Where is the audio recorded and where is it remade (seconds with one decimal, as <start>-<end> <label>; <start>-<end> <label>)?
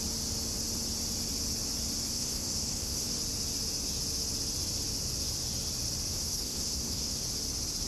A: 0.0-2.1 recorded; 2.1-3.2 remade; 3.2-6.1 recorded; 6.1-7.2 remade; 7.2-7.9 recorded